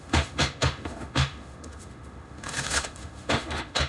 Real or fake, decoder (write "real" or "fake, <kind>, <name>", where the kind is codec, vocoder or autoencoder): fake, autoencoder, DAC-VAE